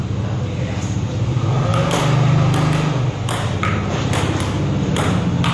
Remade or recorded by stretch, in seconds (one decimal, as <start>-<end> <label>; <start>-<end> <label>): 0.0-5.5 recorded